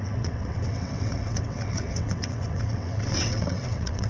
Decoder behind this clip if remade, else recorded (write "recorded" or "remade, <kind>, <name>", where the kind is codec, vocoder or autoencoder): remade, vocoder, WaveNeXt